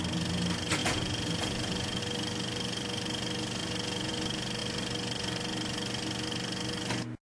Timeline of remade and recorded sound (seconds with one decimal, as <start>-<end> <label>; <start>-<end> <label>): 0.0-0.8 recorded; 0.8-2.0 remade; 2.0-3.6 recorded; 3.6-4.1 remade; 4.1-7.3 recorded